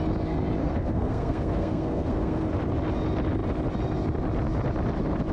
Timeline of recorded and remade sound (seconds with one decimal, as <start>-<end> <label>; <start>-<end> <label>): 0.0-0.6 recorded; 0.6-2.5 remade; 2.5-5.3 recorded